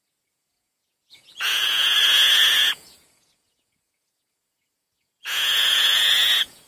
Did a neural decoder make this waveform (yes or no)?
yes